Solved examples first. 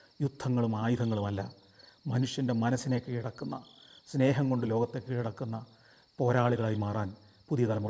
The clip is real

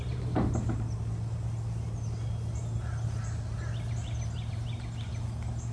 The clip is real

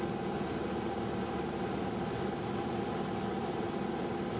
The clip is real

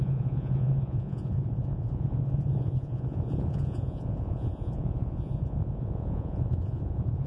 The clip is fake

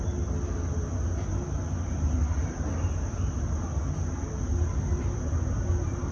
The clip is real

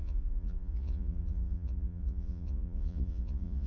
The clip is fake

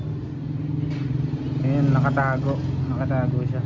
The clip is real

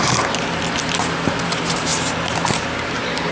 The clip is real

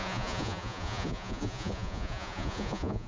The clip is fake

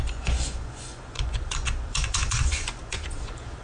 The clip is fake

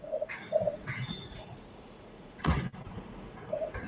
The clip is fake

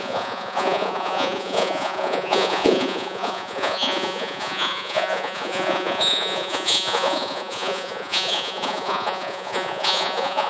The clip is fake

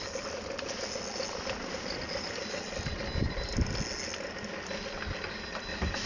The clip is real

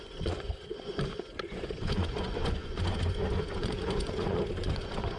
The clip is fake